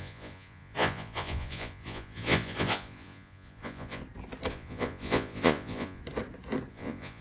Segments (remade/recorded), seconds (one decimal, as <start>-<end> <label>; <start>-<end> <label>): 0.0-4.0 remade; 4.0-4.5 recorded; 4.5-6.0 remade; 6.0-6.7 recorded; 6.7-7.2 remade

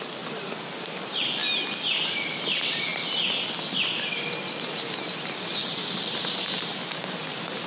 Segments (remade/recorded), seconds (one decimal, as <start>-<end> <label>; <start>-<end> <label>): 0.0-7.7 recorded

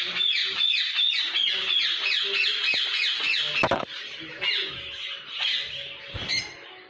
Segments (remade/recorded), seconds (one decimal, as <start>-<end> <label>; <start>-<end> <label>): 0.0-6.9 recorded

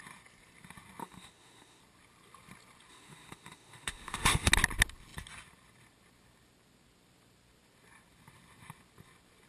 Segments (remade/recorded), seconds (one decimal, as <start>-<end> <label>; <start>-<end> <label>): 0.0-1.0 recorded; 1.0-1.8 remade; 1.8-2.9 recorded; 2.9-4.5 remade; 4.5-9.5 recorded